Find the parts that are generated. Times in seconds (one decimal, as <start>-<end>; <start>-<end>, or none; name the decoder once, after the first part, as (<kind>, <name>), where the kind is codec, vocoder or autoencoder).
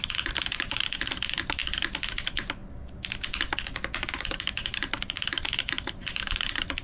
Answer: 0.0-1.6 (vocoder, BigVGAN v2); 2.2-2.6; 4.1-6.8